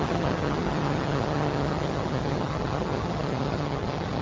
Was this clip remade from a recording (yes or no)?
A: yes